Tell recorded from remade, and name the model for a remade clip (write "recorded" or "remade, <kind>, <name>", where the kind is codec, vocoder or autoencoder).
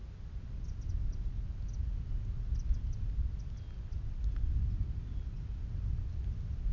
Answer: recorded